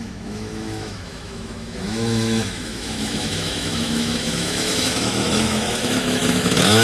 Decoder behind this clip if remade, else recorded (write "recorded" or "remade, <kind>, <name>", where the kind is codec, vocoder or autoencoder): remade, autoencoder, DAC-VAE